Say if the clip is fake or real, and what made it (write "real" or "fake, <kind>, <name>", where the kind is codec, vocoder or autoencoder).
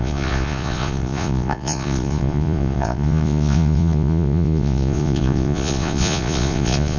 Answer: fake, vocoder, Vocos